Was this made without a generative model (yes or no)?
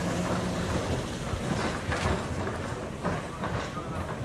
yes